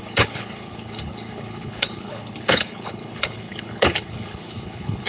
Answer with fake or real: fake